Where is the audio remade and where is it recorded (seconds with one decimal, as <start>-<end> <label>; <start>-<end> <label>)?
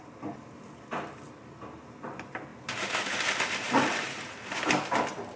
0.0-5.4 recorded